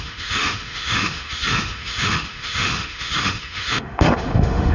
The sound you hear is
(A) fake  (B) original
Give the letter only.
A